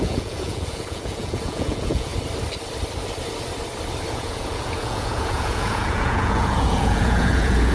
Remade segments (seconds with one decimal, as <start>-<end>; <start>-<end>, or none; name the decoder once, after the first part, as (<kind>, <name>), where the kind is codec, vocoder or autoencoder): 0.0-2.1 (vocoder, Vocos); 4.1-7.7